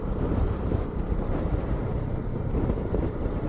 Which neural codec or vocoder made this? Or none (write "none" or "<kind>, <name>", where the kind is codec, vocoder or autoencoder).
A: vocoder, BigVGAN v2